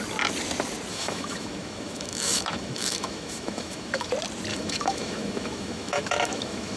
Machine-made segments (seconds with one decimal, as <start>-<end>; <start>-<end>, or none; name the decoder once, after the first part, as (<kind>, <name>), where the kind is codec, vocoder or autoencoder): 0.9-4.1 (autoencoder, DAC-VAE); 4.5-6.8